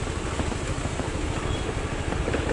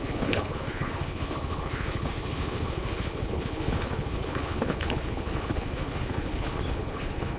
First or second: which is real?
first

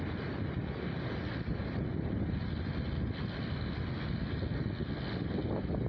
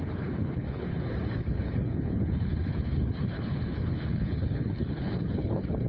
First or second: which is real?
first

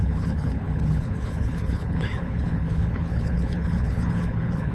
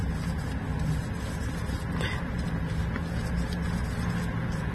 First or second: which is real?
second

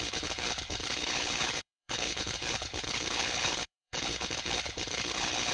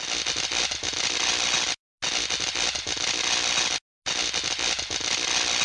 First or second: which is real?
second